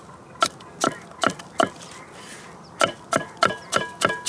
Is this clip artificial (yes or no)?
no